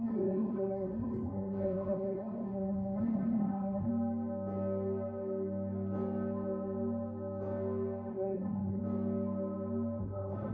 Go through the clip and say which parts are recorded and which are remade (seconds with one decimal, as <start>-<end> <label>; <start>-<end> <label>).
0.0-3.9 remade; 3.9-8.1 recorded; 8.1-8.8 remade; 8.8-10.0 recorded; 10.0-10.5 remade